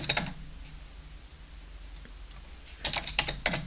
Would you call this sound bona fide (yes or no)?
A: yes